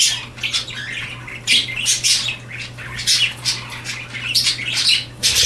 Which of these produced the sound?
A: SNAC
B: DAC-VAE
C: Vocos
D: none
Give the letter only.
D